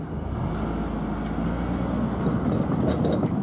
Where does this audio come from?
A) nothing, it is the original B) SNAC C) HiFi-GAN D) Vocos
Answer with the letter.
A